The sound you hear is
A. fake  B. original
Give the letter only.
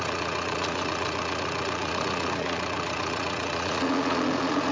A